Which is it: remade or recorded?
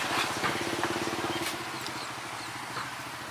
recorded